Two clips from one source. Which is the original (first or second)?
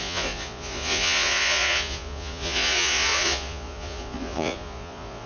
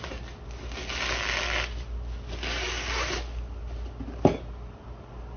second